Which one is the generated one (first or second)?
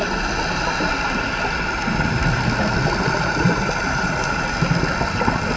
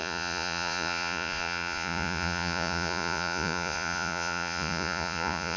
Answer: second